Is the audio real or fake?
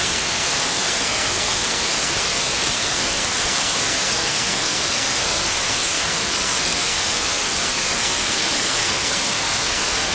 fake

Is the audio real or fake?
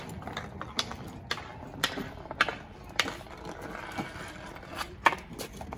real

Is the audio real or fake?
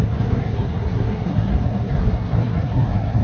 fake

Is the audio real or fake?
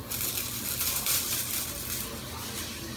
real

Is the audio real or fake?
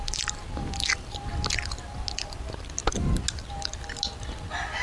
real